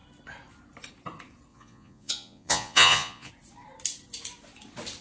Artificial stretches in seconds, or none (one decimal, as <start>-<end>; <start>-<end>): 1.5-3.3